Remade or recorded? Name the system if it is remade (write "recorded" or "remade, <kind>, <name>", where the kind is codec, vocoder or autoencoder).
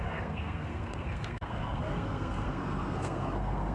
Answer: remade, codec, SNAC